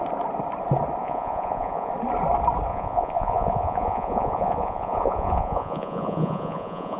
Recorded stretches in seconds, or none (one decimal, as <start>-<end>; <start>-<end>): 0.0-1.0; 1.9-2.7